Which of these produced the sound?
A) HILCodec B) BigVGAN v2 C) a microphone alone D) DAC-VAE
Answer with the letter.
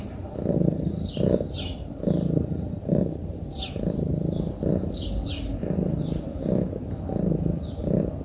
C